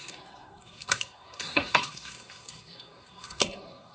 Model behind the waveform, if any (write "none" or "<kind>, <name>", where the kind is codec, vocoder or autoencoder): codec, SNAC